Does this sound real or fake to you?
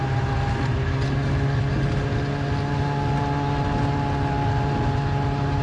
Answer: real